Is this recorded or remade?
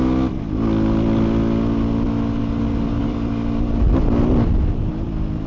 recorded